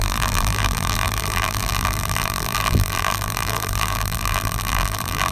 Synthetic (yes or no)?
yes